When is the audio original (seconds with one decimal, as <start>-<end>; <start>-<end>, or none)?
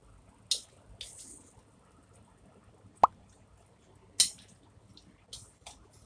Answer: 0.0-6.1